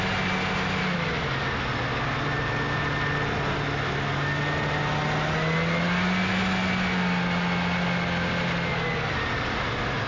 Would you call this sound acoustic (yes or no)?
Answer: yes